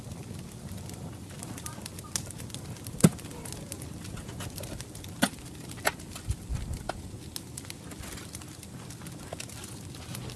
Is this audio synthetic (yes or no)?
no